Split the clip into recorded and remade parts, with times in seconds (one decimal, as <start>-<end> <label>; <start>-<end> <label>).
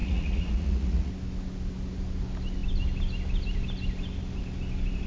0.0-1.1 remade; 1.1-5.1 recorded